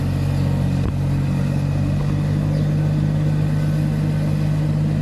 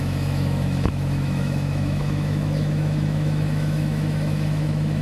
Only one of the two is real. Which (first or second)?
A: first